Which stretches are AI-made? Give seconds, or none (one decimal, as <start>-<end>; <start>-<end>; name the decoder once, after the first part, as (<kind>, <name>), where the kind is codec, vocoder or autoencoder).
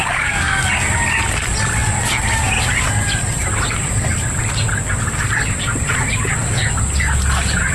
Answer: 0.0-0.7 (codec, DAC)